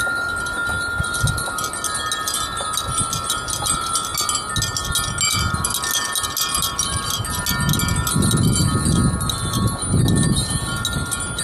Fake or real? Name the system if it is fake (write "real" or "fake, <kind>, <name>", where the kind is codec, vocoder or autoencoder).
real